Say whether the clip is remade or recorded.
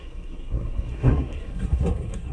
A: remade